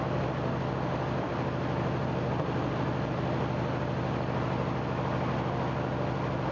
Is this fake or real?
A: real